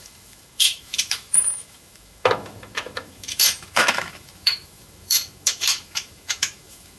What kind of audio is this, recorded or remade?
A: remade